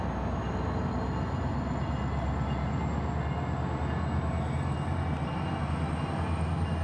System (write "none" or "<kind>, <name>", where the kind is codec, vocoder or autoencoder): none